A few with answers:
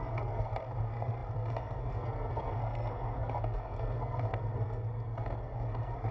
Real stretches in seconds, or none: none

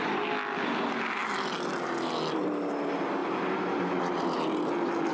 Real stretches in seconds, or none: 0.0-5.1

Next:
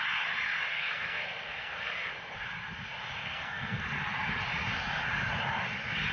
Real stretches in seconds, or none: 0.0-0.7; 2.1-3.2; 3.8-6.1

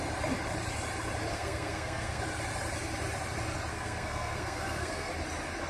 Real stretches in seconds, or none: 0.0-1.3; 2.2-3.7; 5.1-5.7